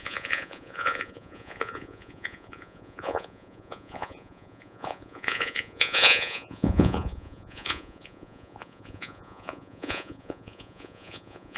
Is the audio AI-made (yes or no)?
yes